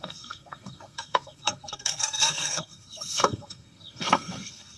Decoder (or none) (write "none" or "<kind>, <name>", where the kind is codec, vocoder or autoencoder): codec, SNAC